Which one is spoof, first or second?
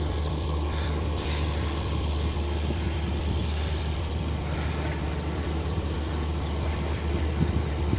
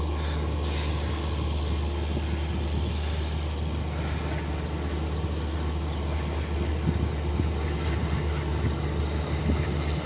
first